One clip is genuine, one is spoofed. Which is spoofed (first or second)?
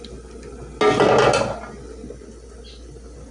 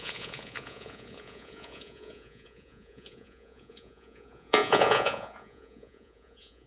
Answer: second